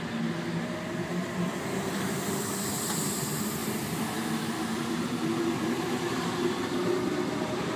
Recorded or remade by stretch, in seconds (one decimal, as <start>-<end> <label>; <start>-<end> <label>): 0.0-1.1 recorded; 1.1-3.2 remade; 3.2-3.6 recorded; 3.6-5.7 remade; 5.7-6.8 recorded; 6.8-7.8 remade